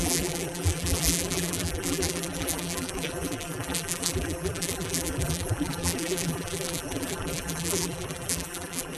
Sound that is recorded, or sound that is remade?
remade